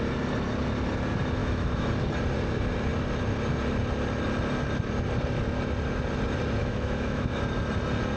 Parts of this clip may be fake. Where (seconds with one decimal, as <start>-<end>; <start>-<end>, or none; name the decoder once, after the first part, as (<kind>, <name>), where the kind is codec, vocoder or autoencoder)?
1.4-1.9 (autoencoder, DAC-VAE); 6.6-7.4